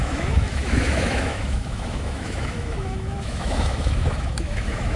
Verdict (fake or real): fake